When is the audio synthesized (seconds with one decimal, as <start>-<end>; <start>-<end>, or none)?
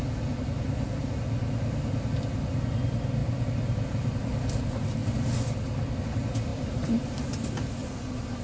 3.2-3.9; 6.5-7.3